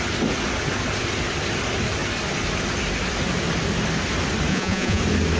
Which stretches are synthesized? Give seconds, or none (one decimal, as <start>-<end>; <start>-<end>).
4.5-5.0